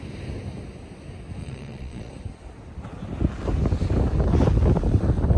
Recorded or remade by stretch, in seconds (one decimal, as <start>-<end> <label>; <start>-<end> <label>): 0.0-1.4 recorded; 1.4-2.1 remade; 2.1-5.4 recorded